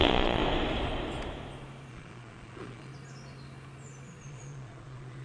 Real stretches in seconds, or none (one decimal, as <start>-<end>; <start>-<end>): 0.4-1.9; 2.9-4.2